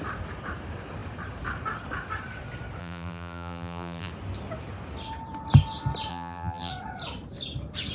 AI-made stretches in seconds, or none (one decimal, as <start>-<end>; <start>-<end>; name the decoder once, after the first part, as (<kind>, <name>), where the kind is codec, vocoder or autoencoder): 2.8-4.1 (vocoder, BigVGAN v2); 6.1-6.7

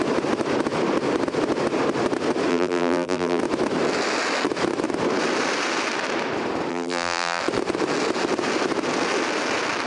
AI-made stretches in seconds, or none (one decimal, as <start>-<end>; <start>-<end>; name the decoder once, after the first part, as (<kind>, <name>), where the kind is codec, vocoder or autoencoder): 2.5-3.4 (vocoder, BigVGAN v2); 6.7-7.4

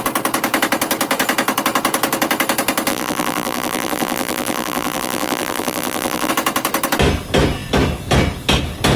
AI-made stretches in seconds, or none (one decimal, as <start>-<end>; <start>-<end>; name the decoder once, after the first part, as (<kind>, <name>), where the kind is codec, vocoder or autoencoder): 2.9-6.3 (vocoder, BigVGAN v2)

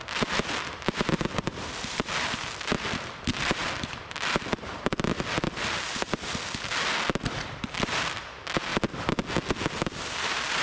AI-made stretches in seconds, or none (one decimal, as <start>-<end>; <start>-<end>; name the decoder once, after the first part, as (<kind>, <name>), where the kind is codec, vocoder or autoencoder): 0.0-8.7 (vocoder, BigVGAN v2); 9.7-10.6

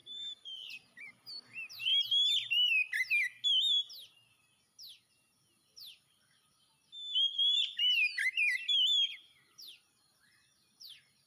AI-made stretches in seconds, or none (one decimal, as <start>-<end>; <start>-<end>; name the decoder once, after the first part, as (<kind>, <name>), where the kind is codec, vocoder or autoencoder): 0.0-1.9 (vocoder, BigVGAN v2); 5.1-6.8; 9.1-11.3

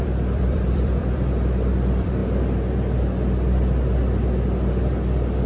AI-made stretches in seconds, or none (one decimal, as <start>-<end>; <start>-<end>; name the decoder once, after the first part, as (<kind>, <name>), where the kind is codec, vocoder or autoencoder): 0.0-2.2 (vocoder, BigVGAN v2)

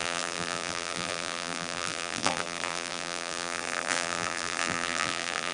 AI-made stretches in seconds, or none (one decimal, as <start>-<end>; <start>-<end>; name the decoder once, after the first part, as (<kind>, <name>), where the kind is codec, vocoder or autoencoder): 0.0-5.5 (vocoder, BigVGAN v2)